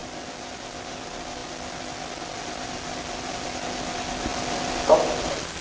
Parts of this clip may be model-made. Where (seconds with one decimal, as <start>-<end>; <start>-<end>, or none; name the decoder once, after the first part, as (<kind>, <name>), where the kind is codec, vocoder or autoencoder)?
none